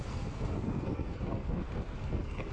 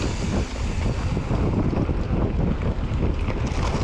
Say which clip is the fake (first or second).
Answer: first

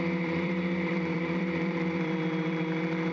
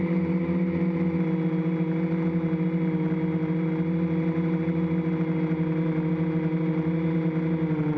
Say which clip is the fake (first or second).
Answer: first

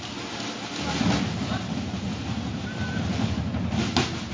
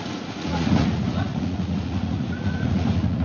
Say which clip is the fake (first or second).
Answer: second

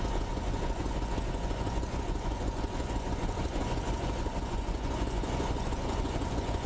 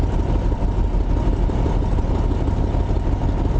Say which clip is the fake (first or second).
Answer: first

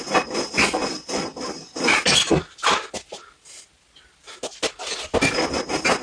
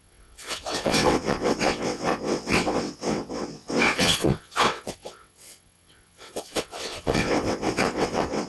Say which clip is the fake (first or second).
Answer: second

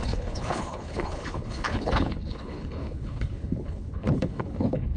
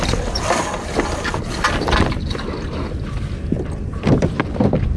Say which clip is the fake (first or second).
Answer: first